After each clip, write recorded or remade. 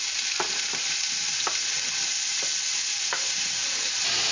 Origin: recorded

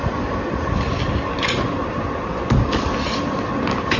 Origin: recorded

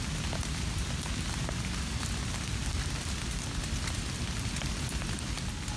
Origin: recorded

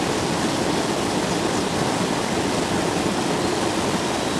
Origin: recorded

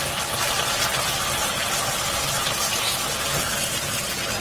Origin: recorded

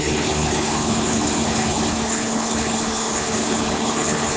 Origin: remade